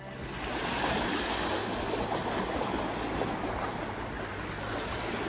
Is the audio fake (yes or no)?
no